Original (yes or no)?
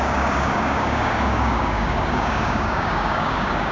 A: no